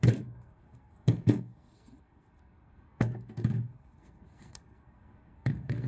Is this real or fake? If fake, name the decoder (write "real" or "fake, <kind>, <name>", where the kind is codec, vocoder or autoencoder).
fake, codec, SNAC